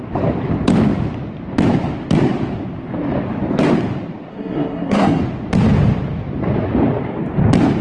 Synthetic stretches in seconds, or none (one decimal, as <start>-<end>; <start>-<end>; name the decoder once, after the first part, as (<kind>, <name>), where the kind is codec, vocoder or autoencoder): 4.3-5.2 (codec, SNAC)